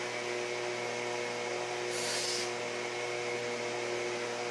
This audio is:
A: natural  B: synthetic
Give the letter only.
A